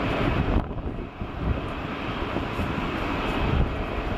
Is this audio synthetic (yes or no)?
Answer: no